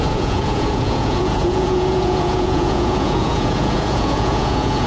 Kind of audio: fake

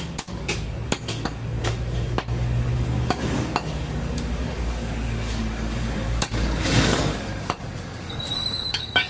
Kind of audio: fake